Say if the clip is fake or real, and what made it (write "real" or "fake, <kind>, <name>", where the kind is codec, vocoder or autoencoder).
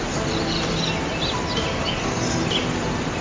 real